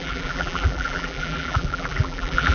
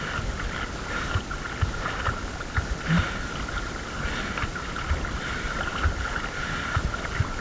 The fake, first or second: first